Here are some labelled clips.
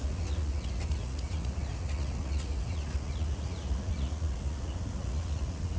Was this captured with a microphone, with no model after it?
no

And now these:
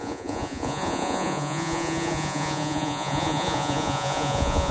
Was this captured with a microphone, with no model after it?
no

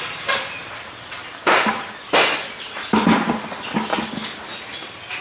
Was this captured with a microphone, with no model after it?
yes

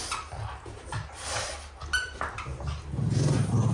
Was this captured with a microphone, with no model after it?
yes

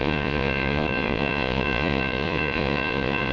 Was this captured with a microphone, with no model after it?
no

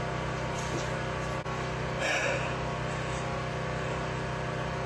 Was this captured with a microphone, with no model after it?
yes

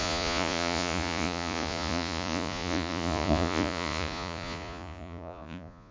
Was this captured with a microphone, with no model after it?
no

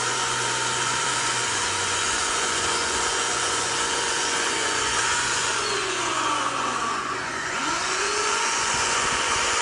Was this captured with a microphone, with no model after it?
no